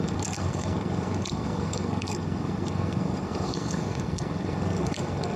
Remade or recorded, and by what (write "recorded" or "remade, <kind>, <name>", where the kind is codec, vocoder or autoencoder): remade, codec, SNAC